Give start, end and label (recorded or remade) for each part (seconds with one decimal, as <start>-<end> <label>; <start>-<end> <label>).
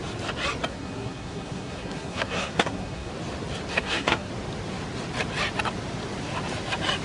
0.0-0.7 recorded; 0.7-3.1 remade; 3.1-3.7 recorded; 3.7-4.3 remade; 4.3-7.0 recorded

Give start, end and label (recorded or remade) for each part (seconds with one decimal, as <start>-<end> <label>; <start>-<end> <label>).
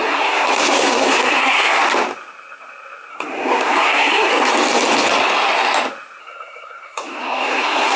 0.0-1.8 remade; 1.8-3.1 recorded; 3.1-4.3 remade; 4.3-6.2 recorded; 6.2-8.0 remade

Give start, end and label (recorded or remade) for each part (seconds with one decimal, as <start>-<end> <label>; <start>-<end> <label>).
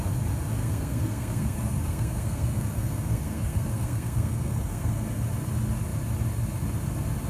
0.0-0.6 recorded; 0.6-5.0 remade; 5.0-7.3 recorded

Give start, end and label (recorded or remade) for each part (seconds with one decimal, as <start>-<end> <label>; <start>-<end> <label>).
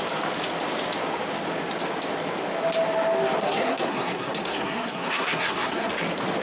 0.0-3.4 recorded; 3.4-5.9 remade; 5.9-6.4 recorded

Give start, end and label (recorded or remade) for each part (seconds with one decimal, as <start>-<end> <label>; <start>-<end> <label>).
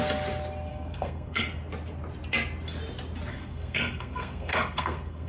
0.0-0.7 recorded; 0.7-1.4 remade; 1.4-3.3 recorded; 3.3-5.3 remade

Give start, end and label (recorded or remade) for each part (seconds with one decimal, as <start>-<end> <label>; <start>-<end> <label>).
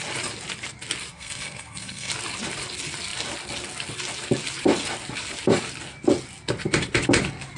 0.0-1.1 recorded; 1.1-2.1 remade; 2.1-7.6 recorded